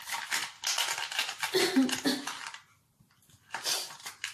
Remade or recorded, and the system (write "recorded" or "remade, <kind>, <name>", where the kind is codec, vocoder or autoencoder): recorded